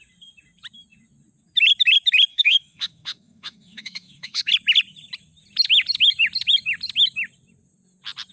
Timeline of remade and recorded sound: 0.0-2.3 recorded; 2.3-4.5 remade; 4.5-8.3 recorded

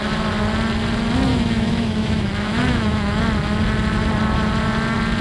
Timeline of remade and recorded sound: 0.0-1.3 recorded; 1.3-3.2 remade; 3.2-5.2 recorded